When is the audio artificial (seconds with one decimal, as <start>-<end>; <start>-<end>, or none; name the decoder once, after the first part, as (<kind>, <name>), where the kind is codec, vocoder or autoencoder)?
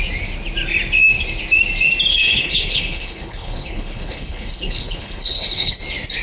2.1-5.8 (codec, HILCodec)